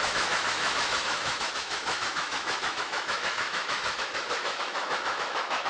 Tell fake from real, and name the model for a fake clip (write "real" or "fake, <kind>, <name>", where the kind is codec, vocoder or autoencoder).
fake, autoencoder, DAC-VAE